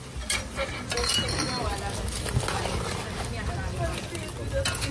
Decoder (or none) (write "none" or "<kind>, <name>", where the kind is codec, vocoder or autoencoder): none